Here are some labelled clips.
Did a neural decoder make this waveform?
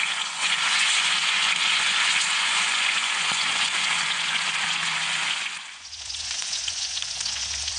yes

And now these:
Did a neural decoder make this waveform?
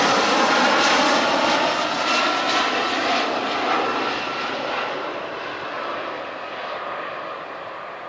no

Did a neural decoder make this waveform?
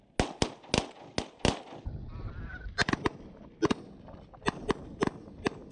no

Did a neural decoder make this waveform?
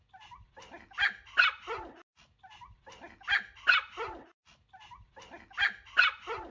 no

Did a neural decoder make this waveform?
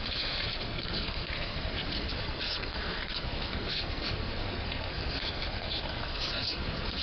yes